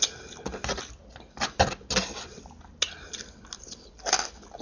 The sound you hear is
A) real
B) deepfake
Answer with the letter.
A